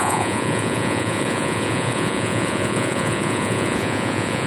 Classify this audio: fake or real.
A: fake